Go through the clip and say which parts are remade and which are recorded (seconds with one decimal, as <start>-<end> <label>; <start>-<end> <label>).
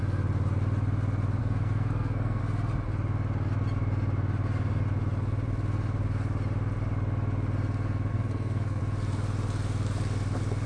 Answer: 0.0-1.4 recorded; 1.4-2.4 remade; 2.4-8.1 recorded; 8.1-8.8 remade; 8.8-10.7 recorded